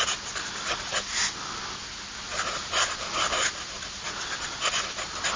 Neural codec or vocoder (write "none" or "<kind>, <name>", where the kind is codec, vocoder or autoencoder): none